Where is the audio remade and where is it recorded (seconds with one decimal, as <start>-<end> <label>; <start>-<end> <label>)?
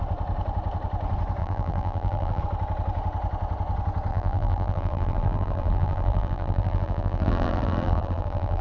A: 0.0-1.4 recorded; 1.4-2.4 remade; 2.4-4.1 recorded; 4.1-8.6 remade